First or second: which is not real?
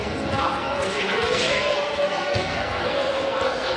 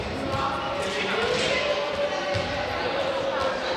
first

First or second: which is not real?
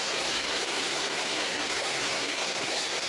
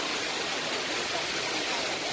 first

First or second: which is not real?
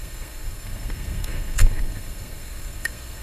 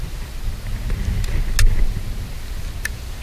first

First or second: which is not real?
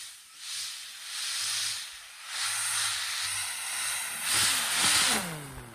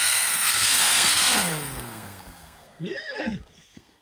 second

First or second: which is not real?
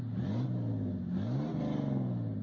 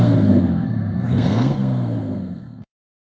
second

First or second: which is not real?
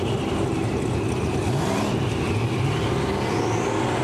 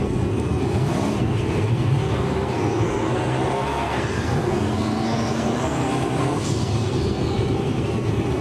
second